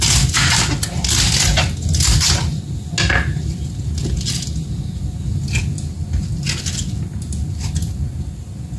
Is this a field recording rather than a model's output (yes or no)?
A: yes